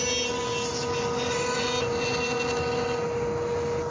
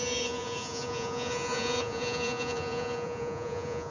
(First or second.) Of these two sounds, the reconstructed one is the second